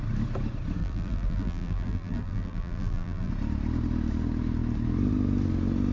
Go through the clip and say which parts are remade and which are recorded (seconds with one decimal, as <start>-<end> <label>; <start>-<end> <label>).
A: 0.0-0.8 recorded; 0.8-3.3 remade; 3.3-5.9 recorded